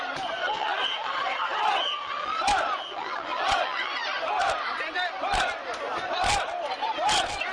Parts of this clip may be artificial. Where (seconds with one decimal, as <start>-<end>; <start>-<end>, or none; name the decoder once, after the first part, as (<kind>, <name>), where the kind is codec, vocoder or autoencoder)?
0.4-2.4 (vocoder, WaveNeXt); 2.9-3.9